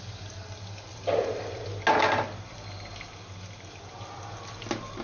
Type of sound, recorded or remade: recorded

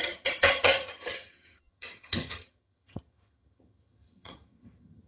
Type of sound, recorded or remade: remade